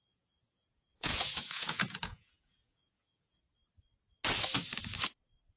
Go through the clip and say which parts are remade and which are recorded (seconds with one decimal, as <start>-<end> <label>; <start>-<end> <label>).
0.0-3.4 remade; 3.4-5.6 recorded